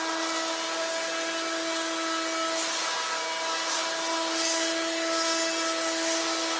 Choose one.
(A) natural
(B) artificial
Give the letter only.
A